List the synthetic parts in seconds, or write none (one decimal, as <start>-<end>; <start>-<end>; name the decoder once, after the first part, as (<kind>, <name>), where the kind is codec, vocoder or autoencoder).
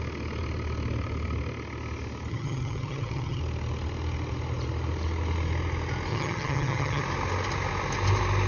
2.3-3.4 (vocoder, HiFi-GAN); 6.1-7.0